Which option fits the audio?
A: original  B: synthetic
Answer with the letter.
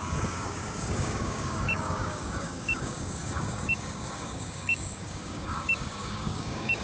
B